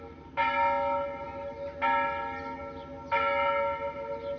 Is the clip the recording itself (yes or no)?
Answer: yes